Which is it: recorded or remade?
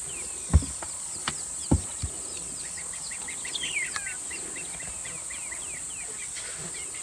recorded